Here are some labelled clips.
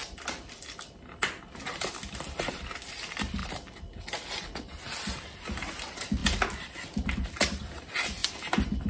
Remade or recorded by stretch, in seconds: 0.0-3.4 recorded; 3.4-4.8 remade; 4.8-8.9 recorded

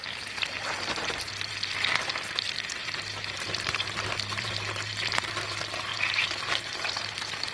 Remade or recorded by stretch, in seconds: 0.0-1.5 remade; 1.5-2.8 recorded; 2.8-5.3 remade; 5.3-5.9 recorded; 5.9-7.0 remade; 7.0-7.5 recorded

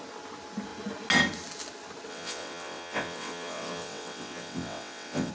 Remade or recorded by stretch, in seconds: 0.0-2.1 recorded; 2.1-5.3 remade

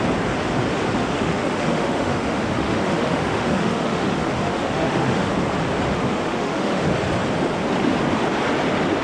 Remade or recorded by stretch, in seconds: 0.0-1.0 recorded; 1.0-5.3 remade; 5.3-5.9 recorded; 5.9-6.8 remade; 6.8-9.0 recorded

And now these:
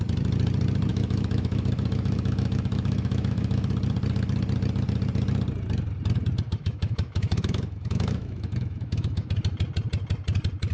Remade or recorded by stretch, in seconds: 0.0-0.9 recorded; 0.9-3.7 remade; 3.7-6.5 recorded; 6.5-9.3 remade; 9.3-10.7 recorded

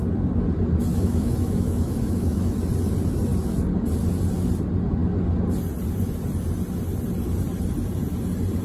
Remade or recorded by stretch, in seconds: 0.0-0.9 recorded; 0.9-2.6 remade; 2.6-8.6 recorded